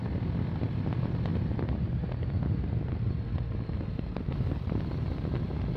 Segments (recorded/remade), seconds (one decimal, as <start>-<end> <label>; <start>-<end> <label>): 0.0-1.3 recorded; 1.3-4.8 remade; 4.8-5.8 recorded